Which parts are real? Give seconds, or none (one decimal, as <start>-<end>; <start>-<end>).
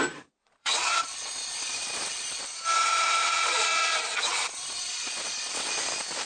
0.0-0.4; 2.4-2.8; 5.7-6.3